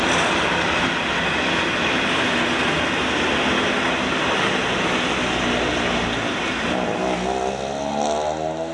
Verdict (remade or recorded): recorded